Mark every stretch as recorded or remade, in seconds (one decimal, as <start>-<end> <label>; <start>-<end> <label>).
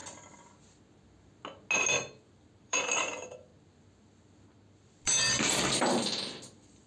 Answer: 0.0-1.8 recorded; 1.8-3.5 remade; 3.5-5.5 recorded; 5.5-6.9 remade